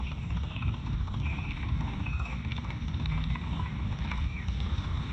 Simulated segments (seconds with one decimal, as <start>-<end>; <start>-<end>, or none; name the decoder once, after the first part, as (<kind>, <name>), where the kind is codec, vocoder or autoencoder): 0.0-5.1 (codec, DAC)